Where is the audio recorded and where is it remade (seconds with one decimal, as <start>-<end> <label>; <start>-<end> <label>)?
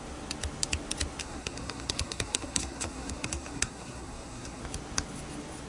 0.0-1.2 recorded; 1.2-4.6 remade; 4.6-5.7 recorded